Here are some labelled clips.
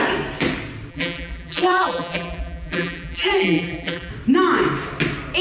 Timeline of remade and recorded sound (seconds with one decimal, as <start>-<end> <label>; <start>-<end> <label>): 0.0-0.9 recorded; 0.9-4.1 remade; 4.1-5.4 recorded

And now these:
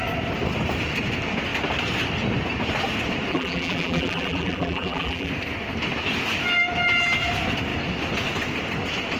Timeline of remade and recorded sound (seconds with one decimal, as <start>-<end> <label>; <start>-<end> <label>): 0.0-3.3 recorded; 3.3-5.3 remade; 5.3-9.2 recorded

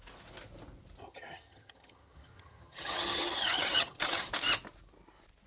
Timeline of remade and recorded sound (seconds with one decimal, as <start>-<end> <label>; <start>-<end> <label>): 0.0-1.0 recorded; 1.0-4.3 remade; 4.3-5.5 recorded